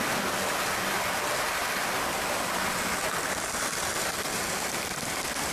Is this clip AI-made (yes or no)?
no